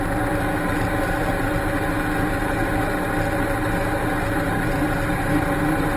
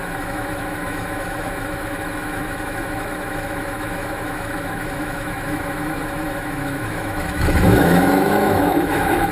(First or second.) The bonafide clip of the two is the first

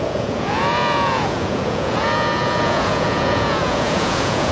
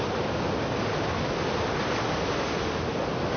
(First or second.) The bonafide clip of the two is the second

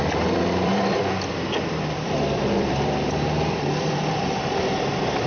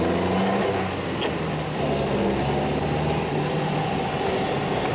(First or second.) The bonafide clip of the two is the second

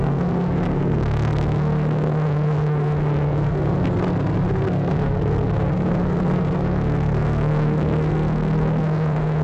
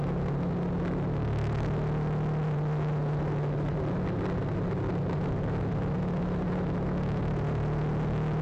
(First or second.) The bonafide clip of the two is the second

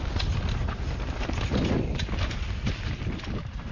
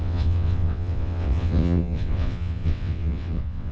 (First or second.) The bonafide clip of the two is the first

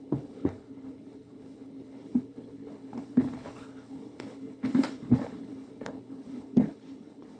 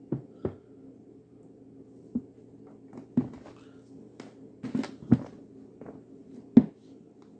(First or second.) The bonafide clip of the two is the second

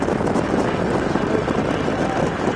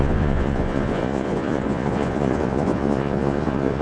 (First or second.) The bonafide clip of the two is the first